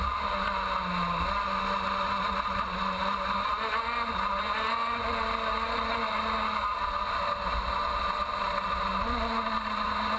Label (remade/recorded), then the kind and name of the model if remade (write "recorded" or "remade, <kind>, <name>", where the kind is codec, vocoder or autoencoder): recorded